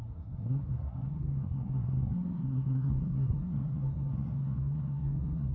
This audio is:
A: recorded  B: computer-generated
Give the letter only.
B